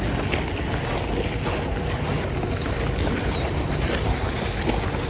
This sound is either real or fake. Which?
real